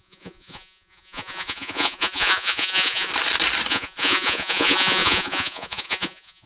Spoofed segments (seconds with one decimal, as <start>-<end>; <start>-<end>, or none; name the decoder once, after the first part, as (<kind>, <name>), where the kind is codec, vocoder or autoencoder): 0.0-3.1 (vocoder, Vocos); 3.7-6.5